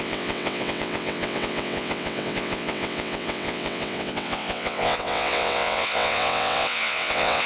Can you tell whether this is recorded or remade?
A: remade